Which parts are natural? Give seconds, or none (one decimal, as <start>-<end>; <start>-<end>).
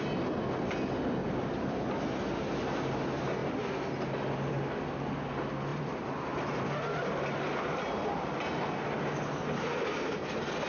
0.0-1.2; 2.0-5.7; 7.9-10.7